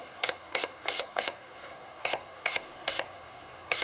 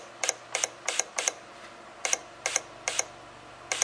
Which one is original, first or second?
second